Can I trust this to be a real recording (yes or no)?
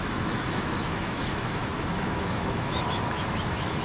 no